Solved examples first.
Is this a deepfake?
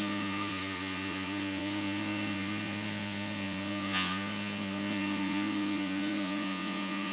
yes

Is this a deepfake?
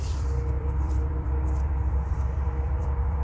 yes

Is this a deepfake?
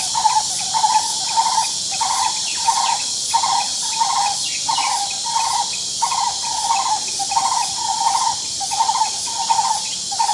no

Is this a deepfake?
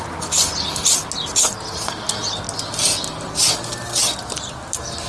no